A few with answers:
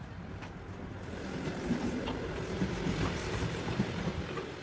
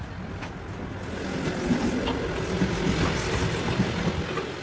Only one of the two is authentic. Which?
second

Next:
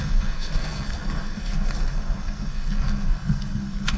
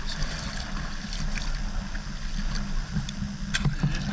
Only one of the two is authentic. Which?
second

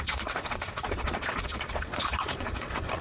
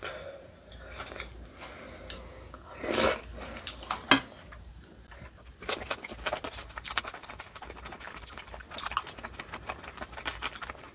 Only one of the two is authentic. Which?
second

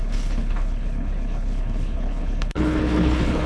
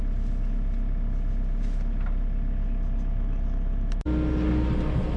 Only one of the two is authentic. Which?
second